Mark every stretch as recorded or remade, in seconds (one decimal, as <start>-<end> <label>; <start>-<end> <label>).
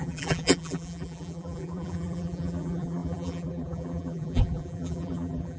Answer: 0.0-5.6 remade